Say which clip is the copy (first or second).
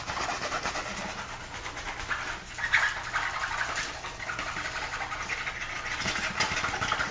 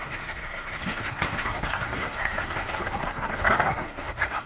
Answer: second